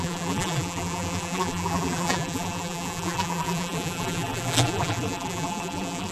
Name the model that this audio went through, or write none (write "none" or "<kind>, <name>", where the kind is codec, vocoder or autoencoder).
vocoder, BigVGAN v2